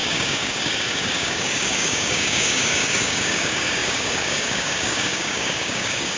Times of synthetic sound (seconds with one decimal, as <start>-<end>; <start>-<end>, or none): 0.0-6.2